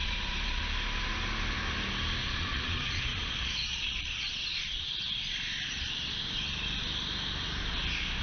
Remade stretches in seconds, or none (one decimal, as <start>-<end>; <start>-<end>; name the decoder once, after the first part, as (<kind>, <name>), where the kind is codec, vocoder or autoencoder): 0.0-0.6 (vocoder, Vocos); 2.2-4.4